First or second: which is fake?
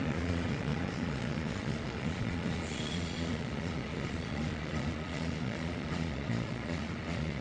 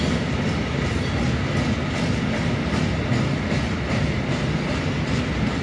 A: first